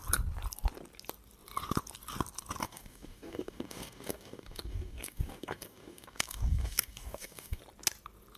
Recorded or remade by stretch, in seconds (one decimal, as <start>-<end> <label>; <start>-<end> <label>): 0.0-2.6 recorded; 2.6-7.6 remade; 7.6-8.4 recorded